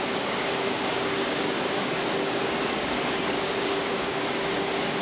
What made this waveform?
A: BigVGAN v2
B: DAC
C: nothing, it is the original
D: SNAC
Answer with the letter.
B